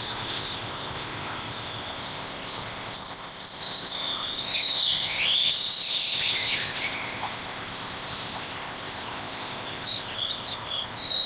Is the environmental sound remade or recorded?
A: remade